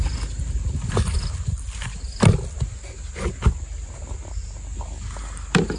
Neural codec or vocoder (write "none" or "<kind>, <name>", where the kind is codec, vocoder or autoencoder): none